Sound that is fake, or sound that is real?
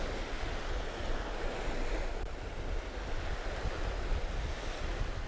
real